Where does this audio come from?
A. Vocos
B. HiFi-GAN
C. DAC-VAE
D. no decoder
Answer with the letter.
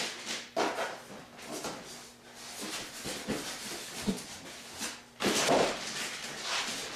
D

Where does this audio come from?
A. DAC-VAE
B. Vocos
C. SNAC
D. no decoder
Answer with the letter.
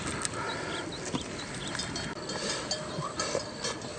D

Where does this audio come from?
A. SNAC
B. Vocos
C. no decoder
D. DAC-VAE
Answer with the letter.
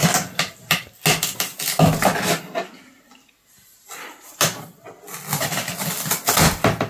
C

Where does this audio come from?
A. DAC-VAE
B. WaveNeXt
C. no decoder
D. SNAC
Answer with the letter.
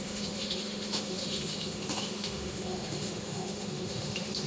A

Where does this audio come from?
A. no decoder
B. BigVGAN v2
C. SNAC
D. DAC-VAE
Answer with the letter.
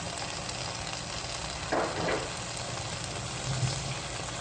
A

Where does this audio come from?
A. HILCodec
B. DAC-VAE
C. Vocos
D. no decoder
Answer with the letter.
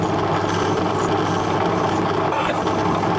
D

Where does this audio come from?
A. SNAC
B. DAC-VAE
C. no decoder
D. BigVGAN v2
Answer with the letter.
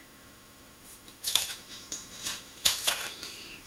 B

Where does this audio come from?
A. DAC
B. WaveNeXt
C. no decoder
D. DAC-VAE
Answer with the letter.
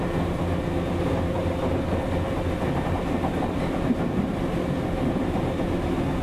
C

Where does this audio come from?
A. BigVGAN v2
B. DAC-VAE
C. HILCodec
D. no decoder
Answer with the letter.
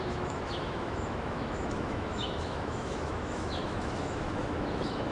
B